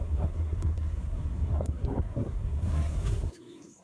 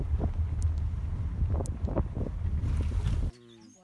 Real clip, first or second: second